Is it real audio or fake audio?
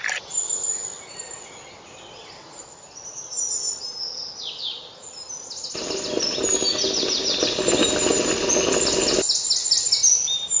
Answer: real